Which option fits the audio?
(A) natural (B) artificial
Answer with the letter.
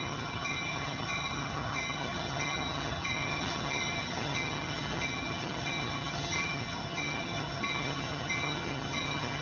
B